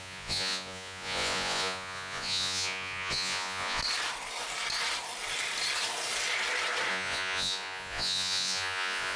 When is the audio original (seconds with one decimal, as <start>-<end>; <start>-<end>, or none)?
3.8-6.9